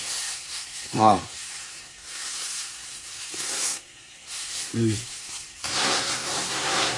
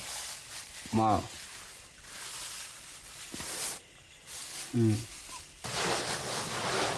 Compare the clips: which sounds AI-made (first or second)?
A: first